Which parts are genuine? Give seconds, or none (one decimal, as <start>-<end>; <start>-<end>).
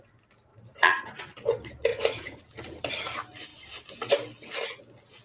0.0-0.5; 1.2-1.9; 2.4-5.2